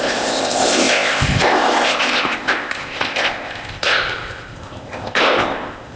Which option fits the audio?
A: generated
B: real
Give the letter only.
A